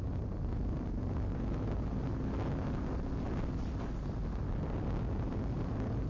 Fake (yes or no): no